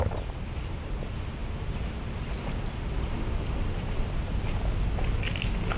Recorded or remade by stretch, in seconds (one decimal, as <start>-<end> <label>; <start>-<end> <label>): 0.0-5.8 recorded